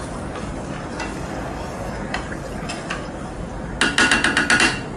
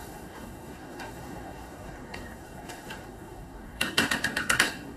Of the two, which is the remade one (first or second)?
second